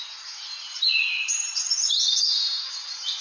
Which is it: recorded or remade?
remade